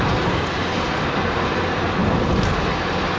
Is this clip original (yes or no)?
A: yes